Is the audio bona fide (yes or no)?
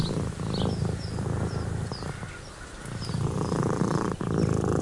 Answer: yes